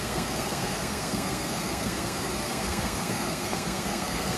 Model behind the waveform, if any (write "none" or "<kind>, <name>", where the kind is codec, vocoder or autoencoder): codec, SNAC